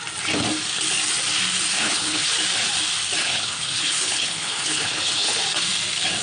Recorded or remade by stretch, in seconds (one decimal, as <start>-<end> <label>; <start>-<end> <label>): 0.0-1.7 recorded; 1.7-2.3 remade; 2.3-3.2 recorded; 3.2-5.4 remade; 5.4-6.2 recorded